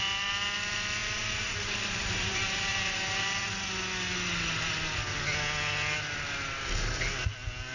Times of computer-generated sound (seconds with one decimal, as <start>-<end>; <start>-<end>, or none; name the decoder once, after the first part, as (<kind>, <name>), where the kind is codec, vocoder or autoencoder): 1.0-3.4 (vocoder, BigVGAN v2)